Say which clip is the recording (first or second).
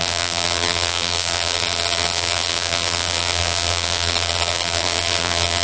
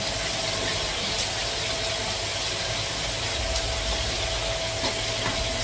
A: second